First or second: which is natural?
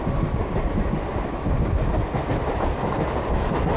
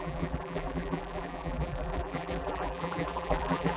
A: first